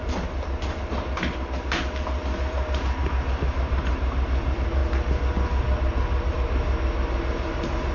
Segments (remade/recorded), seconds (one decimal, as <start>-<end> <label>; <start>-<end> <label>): 0.0-4.8 remade; 4.8-6.3 recorded; 6.3-7.9 remade